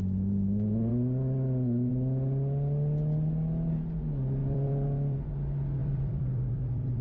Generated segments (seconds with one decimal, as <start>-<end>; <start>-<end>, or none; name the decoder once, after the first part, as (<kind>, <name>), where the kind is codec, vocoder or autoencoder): 4.4-5.3 (vocoder, BigVGAN v2); 5.8-7.0